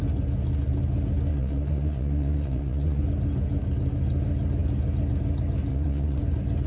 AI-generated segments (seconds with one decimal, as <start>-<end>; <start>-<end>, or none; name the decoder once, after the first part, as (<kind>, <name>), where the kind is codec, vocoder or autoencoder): 1.3-3.0 (vocoder, Vocos); 5.7-6.2